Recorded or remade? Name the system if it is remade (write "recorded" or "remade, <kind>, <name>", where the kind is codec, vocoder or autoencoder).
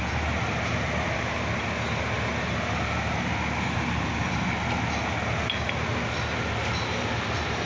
recorded